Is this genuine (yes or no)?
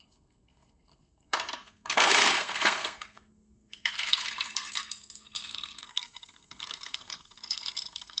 no